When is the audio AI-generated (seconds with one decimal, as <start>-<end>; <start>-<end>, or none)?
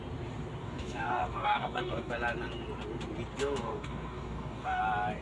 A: 0.6-2.1; 3.4-4.8